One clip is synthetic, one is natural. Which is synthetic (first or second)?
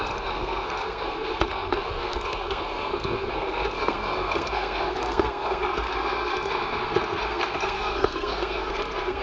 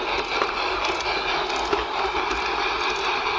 first